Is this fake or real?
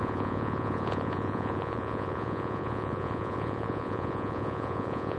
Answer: fake